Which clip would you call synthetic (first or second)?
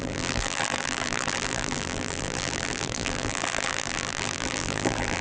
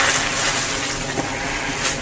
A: first